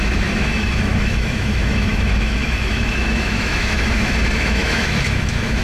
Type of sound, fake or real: fake